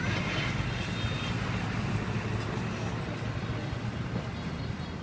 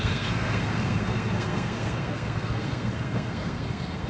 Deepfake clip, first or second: second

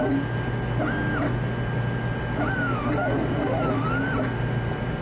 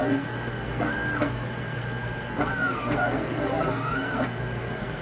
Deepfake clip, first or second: second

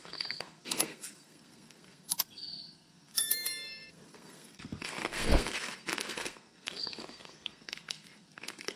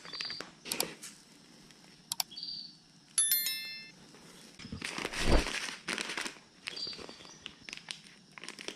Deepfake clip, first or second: first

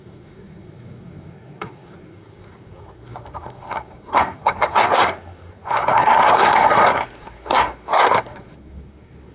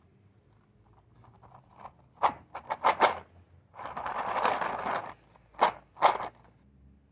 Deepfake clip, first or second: first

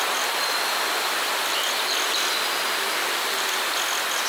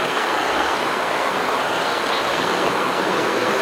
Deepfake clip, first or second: second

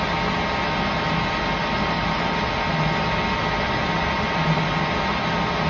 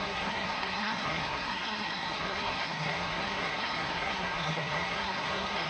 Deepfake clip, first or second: second